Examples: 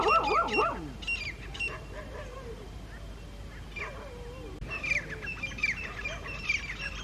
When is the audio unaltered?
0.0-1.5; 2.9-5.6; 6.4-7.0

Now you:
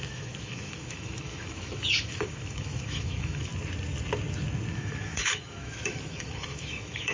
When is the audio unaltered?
3.5-4.7

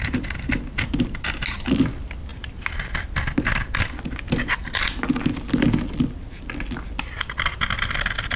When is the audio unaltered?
0.0-2.3; 2.9-8.4